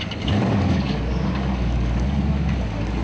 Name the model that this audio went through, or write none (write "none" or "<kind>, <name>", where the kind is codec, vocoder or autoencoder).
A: codec, DAC